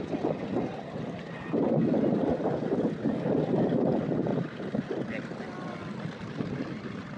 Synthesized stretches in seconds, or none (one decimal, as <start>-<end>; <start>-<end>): none